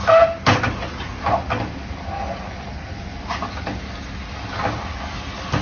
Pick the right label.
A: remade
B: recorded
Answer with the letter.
B